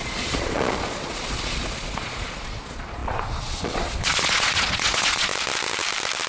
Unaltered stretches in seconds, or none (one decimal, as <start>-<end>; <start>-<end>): 5.3-6.3